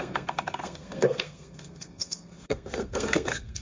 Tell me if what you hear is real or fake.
fake